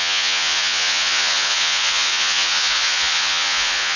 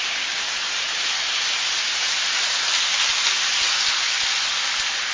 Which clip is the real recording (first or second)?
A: second